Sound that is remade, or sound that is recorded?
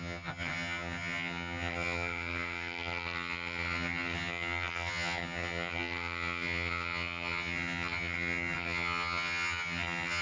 remade